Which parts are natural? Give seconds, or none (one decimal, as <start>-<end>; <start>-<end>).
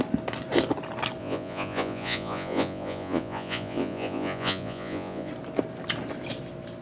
0.0-1.2; 5.3-6.8